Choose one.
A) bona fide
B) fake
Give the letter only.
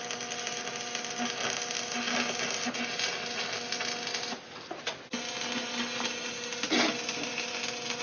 A